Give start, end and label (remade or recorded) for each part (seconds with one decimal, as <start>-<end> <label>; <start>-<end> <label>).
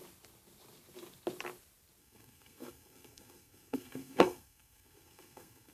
0.0-2.0 recorded; 2.0-5.7 remade